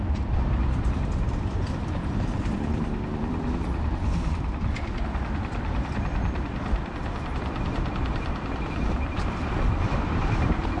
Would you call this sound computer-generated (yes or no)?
yes